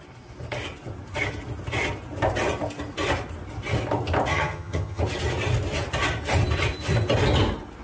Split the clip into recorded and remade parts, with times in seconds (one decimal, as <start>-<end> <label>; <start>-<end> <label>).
0.0-4.3 recorded; 4.3-5.0 remade; 5.0-7.8 recorded